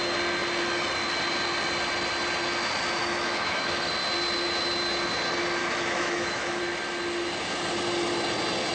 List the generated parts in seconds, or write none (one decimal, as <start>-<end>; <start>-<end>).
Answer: 3.0-3.9; 5.6-6.6